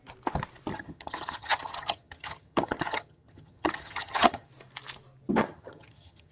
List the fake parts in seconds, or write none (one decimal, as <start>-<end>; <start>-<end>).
0.7-4.5; 5.4-6.3